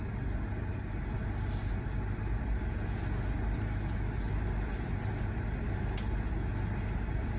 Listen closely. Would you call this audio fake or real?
real